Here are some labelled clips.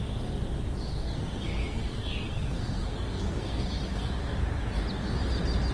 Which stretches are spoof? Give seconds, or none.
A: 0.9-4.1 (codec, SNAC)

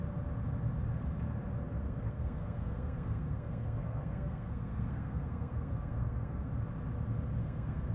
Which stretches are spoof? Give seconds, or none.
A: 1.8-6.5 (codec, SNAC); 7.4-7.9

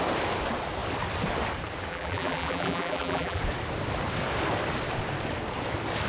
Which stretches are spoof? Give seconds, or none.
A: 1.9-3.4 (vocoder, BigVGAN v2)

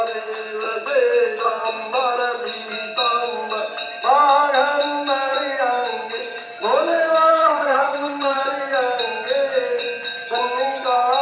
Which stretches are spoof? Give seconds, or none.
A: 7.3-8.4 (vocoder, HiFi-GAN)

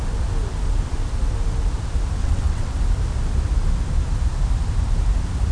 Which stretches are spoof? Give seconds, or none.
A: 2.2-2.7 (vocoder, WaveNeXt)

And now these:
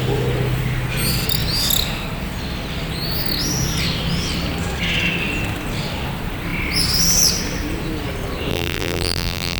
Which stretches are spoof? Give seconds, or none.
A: 8.5-9.6 (vocoder, BigVGAN v2)